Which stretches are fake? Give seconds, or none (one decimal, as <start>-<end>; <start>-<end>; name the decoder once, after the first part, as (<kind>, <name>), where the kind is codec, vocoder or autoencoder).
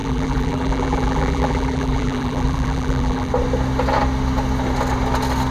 0.0-3.3 (vocoder, BigVGAN v2)